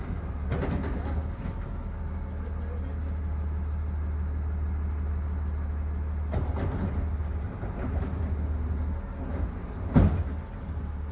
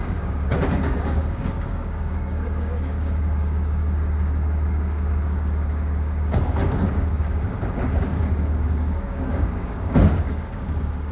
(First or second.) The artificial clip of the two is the second